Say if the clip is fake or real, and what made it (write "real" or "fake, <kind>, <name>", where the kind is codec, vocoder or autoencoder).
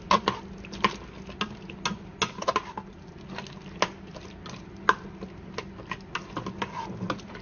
real